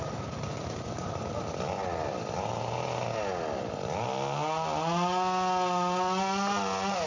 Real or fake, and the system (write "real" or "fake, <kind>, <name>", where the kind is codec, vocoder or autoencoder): real